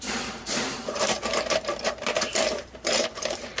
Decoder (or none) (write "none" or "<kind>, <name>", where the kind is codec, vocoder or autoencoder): vocoder, BigVGAN v2